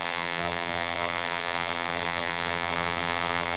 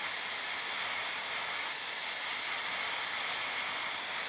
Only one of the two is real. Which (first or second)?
second